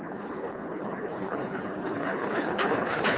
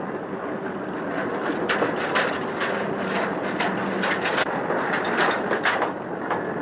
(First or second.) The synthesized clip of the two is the first